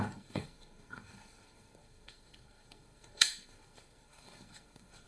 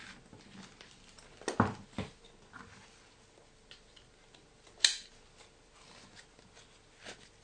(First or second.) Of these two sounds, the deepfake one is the first